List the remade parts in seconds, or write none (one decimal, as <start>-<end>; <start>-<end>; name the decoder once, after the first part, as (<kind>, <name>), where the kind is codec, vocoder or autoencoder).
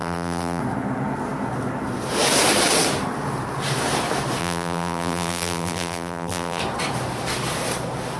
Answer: 0.0-0.6 (vocoder, BigVGAN v2); 4.4-6.6